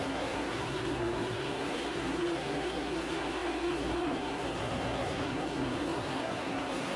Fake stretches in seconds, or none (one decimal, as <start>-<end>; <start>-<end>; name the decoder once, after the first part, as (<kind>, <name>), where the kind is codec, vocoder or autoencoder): 0.0-7.0 (codec, SNAC)